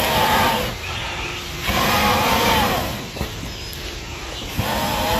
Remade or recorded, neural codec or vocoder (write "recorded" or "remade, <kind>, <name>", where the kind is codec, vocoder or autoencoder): recorded